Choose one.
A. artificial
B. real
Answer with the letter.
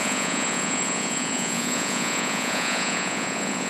A